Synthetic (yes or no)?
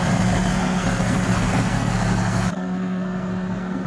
yes